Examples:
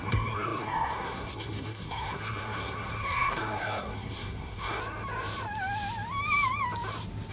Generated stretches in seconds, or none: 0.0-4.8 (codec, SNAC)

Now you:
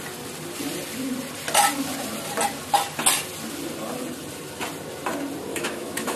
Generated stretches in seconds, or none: 5.5-6.2 (autoencoder, DAC-VAE)

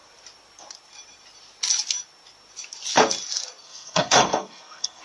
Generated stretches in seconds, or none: 3.6-5.0 (codec, SNAC)